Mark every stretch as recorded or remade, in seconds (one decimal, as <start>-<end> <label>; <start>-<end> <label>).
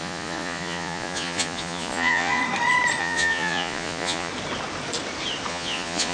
0.0-2.4 remade; 2.4-3.0 recorded; 3.0-4.3 remade; 4.3-5.5 recorded; 5.5-6.1 remade